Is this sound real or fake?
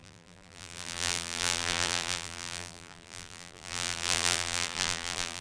fake